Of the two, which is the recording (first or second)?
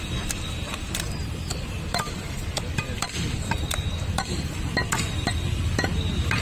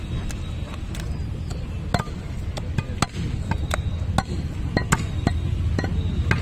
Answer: second